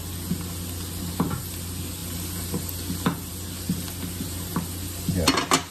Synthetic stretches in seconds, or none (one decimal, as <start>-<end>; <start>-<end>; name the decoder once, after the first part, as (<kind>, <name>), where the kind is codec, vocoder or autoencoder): none